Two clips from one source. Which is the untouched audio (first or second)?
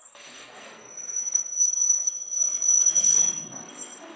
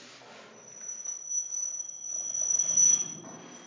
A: second